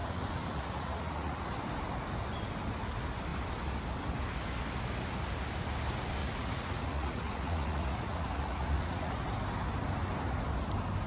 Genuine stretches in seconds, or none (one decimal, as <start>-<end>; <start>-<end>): 1.5-6.2; 9.1-11.1